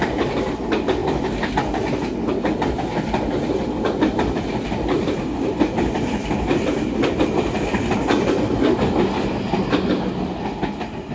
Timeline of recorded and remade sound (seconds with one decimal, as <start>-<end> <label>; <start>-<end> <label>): 0.0-11.1 recorded